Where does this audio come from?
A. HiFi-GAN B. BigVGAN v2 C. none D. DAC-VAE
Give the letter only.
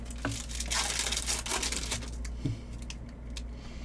C